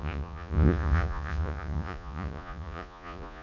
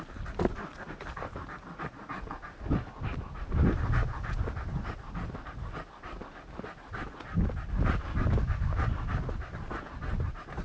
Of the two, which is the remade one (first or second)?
first